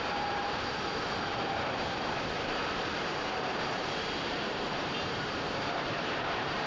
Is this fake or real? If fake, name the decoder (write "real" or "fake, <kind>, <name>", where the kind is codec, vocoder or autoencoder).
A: fake, vocoder, BigVGAN v2